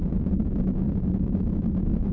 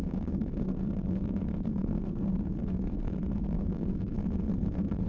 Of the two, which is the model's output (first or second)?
second